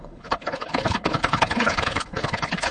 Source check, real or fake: fake